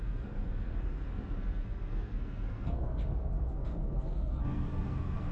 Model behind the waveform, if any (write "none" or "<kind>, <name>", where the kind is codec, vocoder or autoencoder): codec, SNAC